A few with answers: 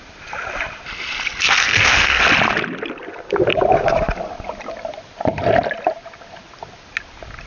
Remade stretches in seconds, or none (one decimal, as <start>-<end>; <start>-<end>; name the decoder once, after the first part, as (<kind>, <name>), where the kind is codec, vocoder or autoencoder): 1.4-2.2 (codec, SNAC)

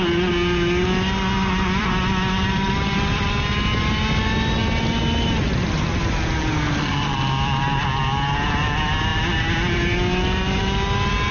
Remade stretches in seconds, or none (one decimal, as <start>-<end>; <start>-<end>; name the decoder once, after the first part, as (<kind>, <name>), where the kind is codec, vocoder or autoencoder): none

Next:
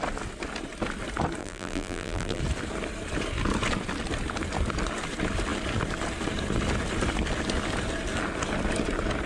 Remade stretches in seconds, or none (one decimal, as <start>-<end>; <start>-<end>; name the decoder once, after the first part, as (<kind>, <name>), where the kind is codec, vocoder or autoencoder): 1.4-2.4 (vocoder, BigVGAN v2)